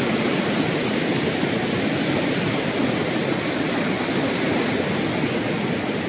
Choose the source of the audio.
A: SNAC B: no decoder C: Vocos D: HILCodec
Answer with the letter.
B